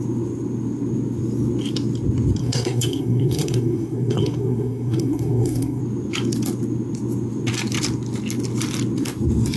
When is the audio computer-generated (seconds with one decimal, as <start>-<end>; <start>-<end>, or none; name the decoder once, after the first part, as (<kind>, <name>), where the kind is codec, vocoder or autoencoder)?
2.4-5.8 (codec, SNAC)